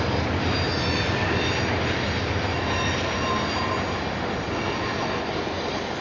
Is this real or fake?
real